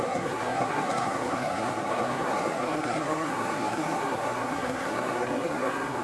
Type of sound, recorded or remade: remade